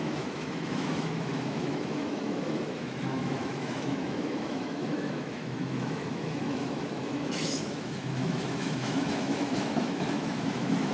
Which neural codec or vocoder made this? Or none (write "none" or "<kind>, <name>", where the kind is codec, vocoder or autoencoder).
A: autoencoder, DAC-VAE